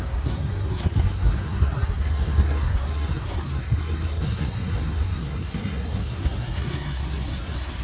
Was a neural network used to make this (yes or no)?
yes